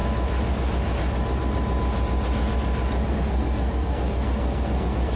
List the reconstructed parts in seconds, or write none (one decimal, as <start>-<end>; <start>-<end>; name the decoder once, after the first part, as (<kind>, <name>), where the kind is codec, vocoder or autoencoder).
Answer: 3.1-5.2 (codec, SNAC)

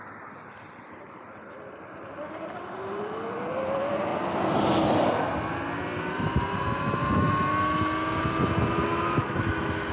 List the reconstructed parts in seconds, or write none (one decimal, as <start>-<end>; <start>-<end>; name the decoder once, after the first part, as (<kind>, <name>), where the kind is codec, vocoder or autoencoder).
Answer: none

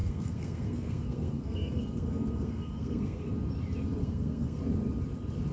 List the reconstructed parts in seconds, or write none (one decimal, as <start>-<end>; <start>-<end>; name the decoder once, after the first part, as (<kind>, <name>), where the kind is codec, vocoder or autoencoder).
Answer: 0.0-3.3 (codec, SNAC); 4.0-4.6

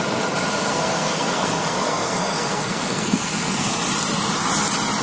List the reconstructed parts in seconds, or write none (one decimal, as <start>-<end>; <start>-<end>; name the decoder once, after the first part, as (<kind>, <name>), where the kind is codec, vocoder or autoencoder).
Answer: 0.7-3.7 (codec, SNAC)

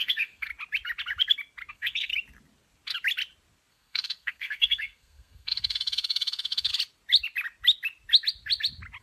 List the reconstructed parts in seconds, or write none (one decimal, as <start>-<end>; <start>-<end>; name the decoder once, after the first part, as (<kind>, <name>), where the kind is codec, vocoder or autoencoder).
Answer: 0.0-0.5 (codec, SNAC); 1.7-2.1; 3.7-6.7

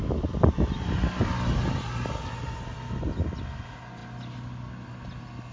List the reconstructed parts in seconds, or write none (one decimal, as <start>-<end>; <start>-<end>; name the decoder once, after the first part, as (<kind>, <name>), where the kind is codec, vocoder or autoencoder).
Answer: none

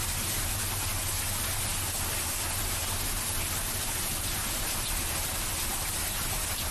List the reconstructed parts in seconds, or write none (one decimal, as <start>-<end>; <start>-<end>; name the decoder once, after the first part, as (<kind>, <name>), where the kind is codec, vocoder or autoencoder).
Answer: none

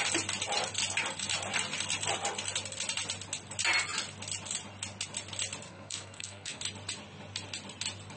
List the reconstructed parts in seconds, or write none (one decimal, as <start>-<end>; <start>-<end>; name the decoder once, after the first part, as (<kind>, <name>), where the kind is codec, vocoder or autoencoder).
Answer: 5.7-6.6 (codec, SNAC)